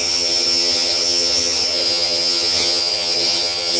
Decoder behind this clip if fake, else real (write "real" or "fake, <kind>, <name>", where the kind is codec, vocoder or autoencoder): fake, vocoder, HiFi-GAN